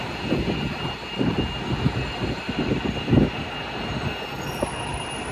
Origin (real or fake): real